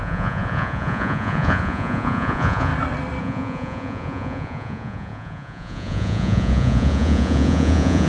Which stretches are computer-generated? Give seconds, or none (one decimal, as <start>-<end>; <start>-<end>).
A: 0.0-2.7; 3.2-8.1